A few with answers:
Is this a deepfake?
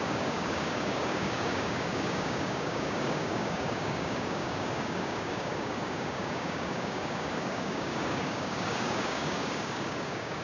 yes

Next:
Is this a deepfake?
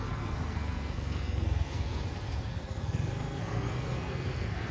yes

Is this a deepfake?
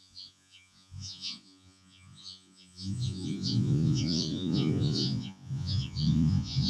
yes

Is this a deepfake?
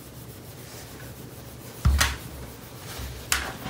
no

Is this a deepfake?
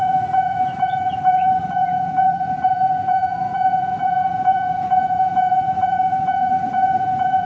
yes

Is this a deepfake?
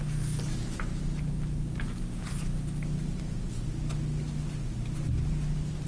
no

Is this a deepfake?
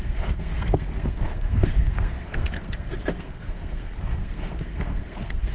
yes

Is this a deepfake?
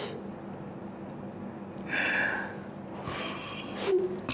no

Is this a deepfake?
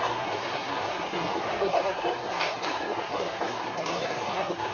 yes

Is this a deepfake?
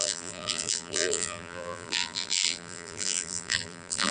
yes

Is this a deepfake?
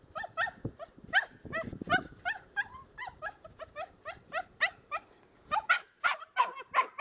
yes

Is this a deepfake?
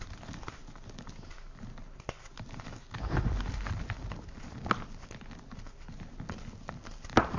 no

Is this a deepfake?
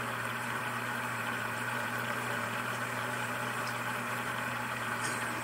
yes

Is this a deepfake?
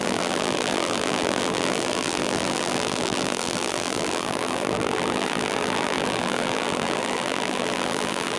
yes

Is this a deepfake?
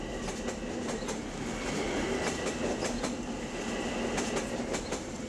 no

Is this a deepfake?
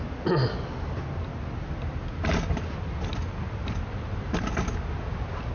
no